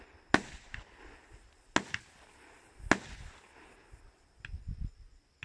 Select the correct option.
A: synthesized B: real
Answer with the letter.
B